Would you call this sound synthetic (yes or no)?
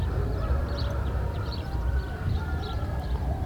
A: yes